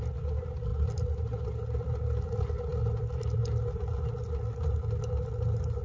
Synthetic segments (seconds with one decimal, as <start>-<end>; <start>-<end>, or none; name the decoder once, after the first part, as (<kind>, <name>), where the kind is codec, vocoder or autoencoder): 0.7-2.1 (vocoder, BigVGAN v2); 2.7-3.4